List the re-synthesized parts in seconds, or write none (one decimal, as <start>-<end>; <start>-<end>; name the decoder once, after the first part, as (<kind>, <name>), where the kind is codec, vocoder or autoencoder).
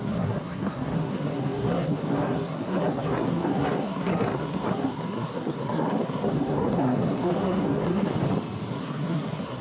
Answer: 0.0-8.1 (codec, SNAC); 8.7-9.6